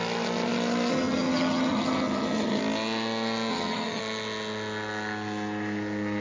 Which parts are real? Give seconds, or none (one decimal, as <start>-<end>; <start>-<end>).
0.0-0.9; 2.6-3.5; 4.0-6.2